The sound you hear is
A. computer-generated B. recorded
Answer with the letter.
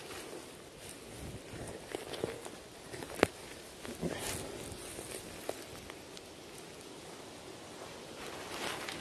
B